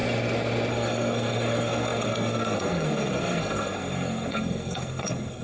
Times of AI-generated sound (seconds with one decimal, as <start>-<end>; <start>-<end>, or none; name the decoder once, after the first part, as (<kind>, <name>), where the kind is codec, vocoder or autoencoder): 0.7-5.4 (codec, SNAC)